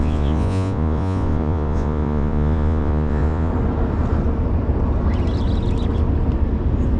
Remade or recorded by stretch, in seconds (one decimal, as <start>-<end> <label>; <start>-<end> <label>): 0.0-3.5 remade; 3.5-7.0 recorded